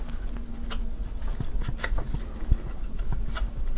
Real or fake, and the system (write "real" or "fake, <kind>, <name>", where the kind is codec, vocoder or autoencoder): real